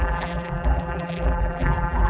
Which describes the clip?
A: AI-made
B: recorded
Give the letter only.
A